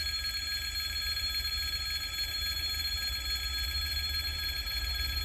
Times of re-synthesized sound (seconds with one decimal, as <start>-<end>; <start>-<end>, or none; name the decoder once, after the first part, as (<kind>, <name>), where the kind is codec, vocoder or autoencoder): 4.3-5.2 (vocoder, BigVGAN v2)